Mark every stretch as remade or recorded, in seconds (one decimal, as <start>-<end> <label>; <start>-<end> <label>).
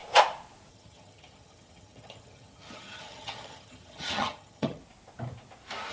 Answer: 0.0-0.7 recorded; 0.7-4.8 remade; 4.8-5.9 recorded